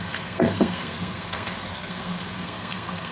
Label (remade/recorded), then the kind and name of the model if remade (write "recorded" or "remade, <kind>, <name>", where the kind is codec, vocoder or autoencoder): remade, codec, SNAC